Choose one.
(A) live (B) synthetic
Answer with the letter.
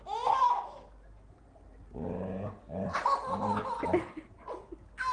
A